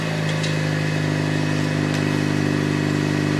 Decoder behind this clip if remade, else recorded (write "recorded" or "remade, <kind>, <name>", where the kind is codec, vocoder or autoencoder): recorded